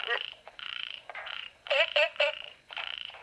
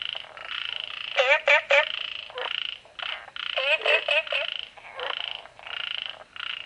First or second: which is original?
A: second